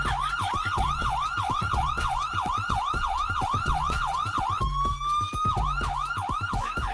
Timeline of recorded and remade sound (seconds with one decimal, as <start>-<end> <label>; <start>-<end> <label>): 0.0-0.5 recorded; 0.5-4.6 remade; 4.6-6.9 recorded